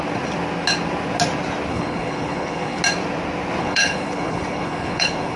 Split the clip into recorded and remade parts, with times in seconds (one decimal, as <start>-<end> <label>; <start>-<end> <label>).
0.0-1.7 recorded; 1.7-2.8 remade; 2.8-3.6 recorded; 3.6-5.4 remade